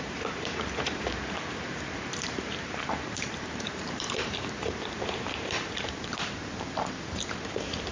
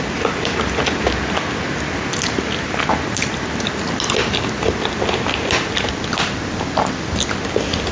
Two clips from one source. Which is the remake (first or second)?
first